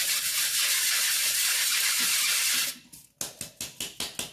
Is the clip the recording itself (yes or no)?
yes